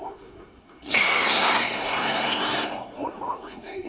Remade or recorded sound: remade